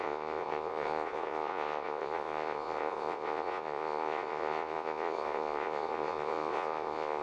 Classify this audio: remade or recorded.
remade